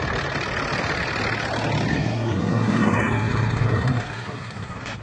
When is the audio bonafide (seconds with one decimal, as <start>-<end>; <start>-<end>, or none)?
0.0-1.9

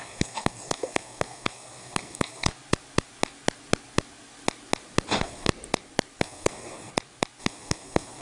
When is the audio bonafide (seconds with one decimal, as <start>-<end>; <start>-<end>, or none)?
2.5-5.1; 5.5-6.2; 6.9-7.4